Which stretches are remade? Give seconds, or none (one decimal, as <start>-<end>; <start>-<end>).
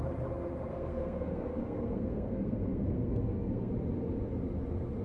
0.7-3.7